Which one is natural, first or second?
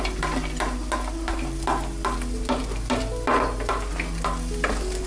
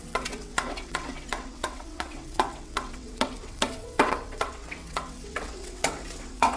first